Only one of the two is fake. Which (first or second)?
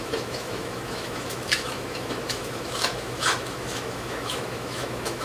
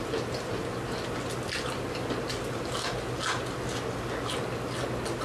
first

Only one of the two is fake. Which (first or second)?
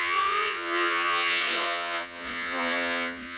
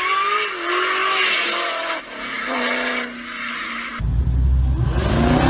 first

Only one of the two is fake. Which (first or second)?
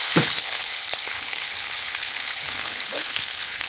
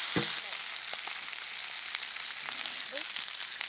first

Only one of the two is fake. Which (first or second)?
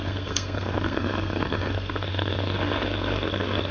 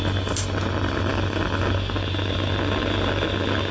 first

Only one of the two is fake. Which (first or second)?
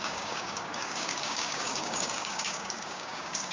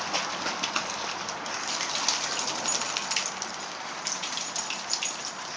first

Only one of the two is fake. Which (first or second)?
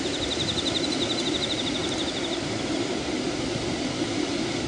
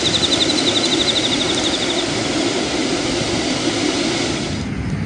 first